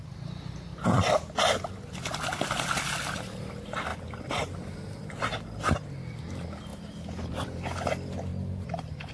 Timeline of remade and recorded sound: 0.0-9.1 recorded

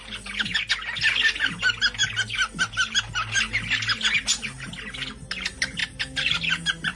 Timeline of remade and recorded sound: 0.0-7.0 recorded

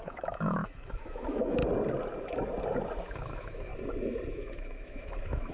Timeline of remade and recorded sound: 0.0-1.6 remade; 1.6-3.0 recorded; 3.0-3.7 remade; 3.7-4.3 recorded; 4.3-5.5 remade